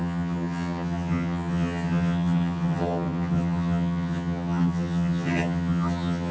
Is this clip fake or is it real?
fake